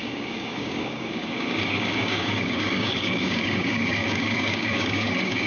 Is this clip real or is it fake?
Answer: fake